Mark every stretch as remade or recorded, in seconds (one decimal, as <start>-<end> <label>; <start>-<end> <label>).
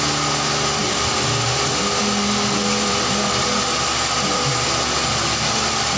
0.0-6.0 recorded